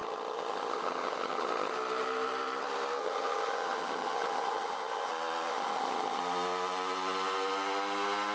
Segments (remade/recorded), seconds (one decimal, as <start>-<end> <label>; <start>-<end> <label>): 0.0-1.7 remade; 1.7-3.0 recorded; 3.0-5.1 remade; 5.1-5.5 recorded; 5.5-6.2 remade; 6.2-8.3 recorded